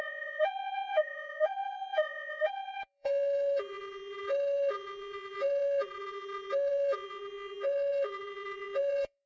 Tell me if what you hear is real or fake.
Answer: fake